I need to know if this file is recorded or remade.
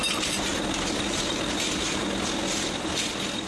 recorded